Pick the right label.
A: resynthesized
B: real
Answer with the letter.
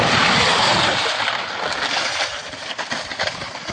B